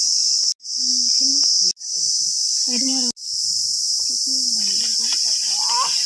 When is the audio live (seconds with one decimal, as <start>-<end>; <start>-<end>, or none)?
0.0-6.1